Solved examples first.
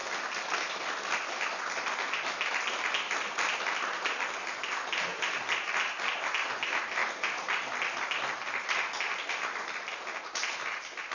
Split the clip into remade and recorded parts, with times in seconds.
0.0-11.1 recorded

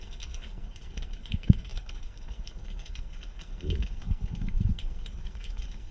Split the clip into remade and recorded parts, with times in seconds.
0.0-5.9 remade

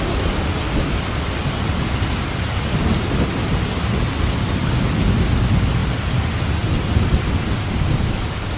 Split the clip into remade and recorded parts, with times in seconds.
0.0-8.6 recorded

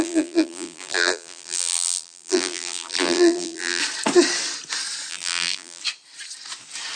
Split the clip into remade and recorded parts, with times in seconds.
0.0-3.8 remade; 3.8-5.1 recorded; 5.1-5.8 remade; 5.8-7.0 recorded

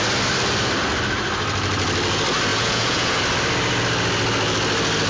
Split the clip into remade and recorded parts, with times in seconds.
0.0-2.5 recorded; 2.5-3.2 remade; 3.2-5.1 recorded

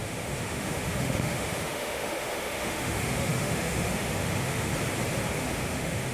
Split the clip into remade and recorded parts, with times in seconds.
0.0-4.7 remade; 4.7-5.4 recorded; 5.4-6.1 remade

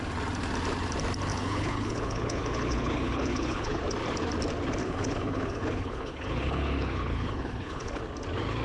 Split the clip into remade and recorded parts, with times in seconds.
0.0-1.3 recorded; 1.3-3.8 remade; 3.8-4.8 recorded; 4.8-8.0 remade; 8.0-8.6 recorded